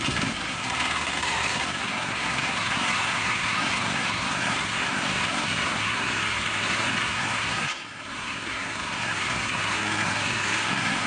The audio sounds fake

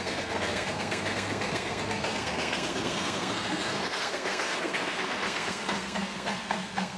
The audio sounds fake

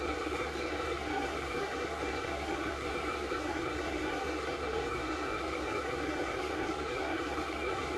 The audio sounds fake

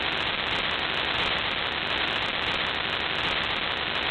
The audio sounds real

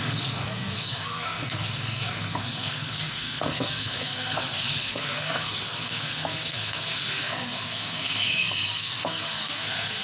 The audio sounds fake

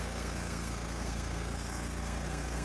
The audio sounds fake